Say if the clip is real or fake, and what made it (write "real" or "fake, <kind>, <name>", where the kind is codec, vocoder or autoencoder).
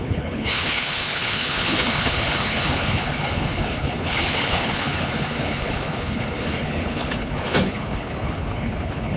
fake, codec, HILCodec